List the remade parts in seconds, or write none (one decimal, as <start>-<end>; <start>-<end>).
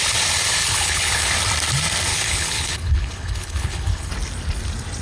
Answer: 0.6-1.3; 2.1-4.1